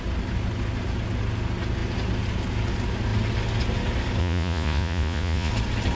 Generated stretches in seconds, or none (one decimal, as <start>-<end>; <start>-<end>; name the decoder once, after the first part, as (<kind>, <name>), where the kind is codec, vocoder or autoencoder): 4.2-5.5 (vocoder, Vocos)